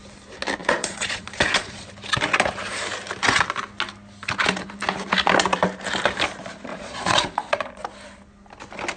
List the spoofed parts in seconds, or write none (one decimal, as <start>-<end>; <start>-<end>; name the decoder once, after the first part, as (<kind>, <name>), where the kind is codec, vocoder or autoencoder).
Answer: 0.6-1.9 (vocoder, Vocos); 6.7-7.7

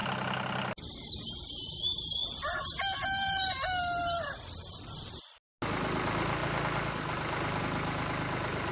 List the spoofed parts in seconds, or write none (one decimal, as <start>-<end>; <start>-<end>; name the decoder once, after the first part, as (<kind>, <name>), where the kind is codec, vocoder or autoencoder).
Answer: none

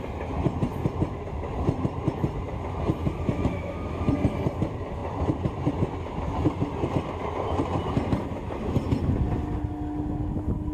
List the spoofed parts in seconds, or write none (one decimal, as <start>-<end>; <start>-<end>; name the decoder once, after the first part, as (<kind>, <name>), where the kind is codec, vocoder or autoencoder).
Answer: 3.0-4.0 (autoencoder, DAC-VAE)

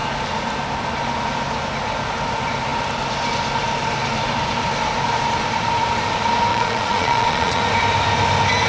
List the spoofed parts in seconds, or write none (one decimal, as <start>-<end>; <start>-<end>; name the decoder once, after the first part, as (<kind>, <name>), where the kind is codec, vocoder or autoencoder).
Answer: 6.5-7.6 (vocoder, Vocos)